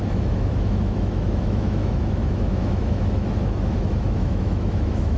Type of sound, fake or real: fake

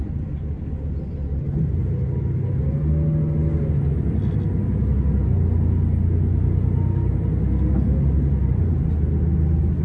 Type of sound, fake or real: real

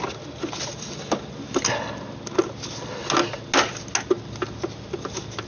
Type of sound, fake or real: real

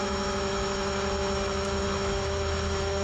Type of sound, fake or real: fake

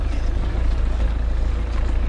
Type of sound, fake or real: real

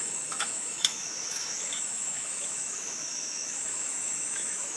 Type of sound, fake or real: fake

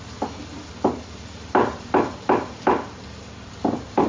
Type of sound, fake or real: real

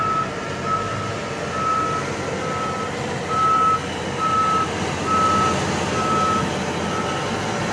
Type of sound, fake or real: real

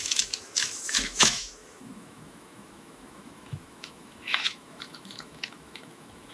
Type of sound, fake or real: fake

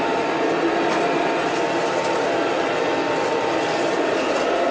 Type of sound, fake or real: real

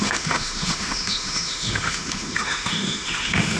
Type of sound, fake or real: fake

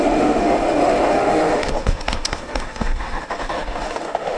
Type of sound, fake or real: fake